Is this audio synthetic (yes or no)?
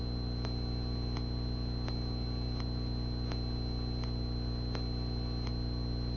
no